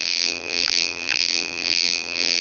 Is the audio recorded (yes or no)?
no